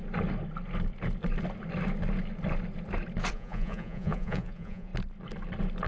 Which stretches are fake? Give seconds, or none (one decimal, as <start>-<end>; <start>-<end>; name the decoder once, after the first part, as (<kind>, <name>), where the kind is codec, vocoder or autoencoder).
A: 3.3-4.9 (vocoder, Vocos)